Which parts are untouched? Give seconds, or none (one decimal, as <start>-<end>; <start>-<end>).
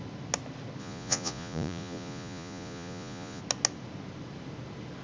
0.0-0.8; 3.4-5.0